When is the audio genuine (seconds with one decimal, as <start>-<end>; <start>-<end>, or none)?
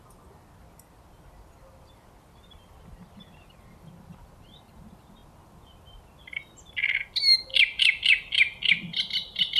0.0-9.6